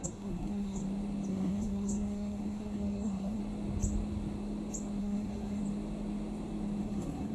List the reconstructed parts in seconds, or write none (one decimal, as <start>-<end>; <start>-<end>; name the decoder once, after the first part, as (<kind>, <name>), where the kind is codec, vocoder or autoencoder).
0.0-0.8 (codec, SNAC); 1.3-3.4; 5.0-5.6; 6.8-7.3